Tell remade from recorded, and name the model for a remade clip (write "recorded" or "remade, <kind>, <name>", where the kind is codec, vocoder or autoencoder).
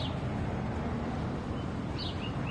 recorded